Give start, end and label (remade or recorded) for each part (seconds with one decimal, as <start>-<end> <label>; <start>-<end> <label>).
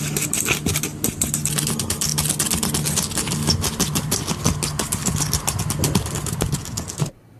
0.0-7.4 recorded